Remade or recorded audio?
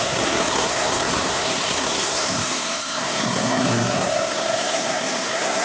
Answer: remade